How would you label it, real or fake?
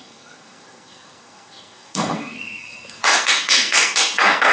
fake